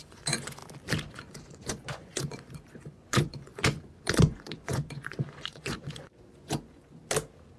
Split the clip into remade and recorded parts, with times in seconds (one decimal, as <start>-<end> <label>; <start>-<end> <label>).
0.0-0.6 remade; 0.6-1.1 recorded; 1.1-7.0 remade; 7.0-7.6 recorded